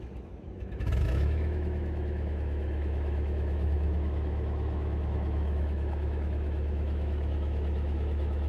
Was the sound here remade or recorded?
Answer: remade